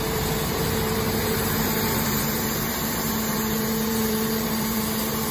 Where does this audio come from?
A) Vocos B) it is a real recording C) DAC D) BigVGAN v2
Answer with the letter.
D